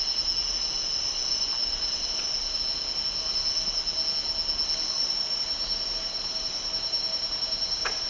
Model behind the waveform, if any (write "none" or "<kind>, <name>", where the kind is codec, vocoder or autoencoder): none